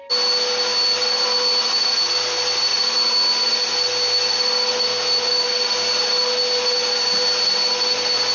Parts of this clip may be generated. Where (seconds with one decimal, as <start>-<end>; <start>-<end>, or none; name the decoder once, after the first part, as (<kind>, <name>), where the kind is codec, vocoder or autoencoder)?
none